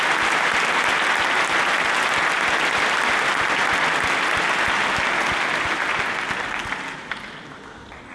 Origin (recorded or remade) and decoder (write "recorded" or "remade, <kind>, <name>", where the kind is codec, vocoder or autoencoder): recorded